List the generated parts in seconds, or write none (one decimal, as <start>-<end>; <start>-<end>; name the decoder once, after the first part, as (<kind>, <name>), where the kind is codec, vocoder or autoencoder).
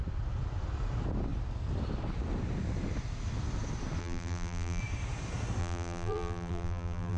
4.0-4.8 (vocoder, BigVGAN v2); 5.6-7.2